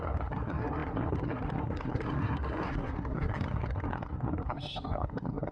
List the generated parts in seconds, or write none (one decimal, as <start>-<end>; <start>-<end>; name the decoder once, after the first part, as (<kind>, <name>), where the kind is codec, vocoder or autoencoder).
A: 0.0-5.5 (codec, SNAC)